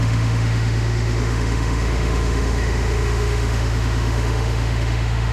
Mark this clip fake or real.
fake